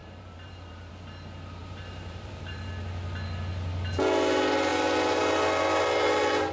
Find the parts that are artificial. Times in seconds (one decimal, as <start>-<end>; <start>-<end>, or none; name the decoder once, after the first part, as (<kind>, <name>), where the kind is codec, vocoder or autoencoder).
0.0-0.9 (vocoder, BigVGAN v2); 1.6-2.6